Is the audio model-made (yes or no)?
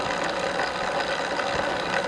no